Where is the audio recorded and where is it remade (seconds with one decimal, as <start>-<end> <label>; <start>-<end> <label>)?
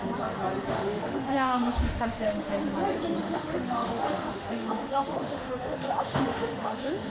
0.0-0.7 recorded; 0.7-2.5 remade; 2.5-3.2 recorded; 3.2-7.1 remade